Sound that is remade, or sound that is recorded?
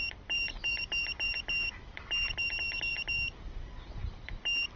remade